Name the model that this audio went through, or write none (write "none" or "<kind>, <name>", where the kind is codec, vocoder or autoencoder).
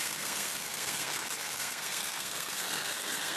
codec, SNAC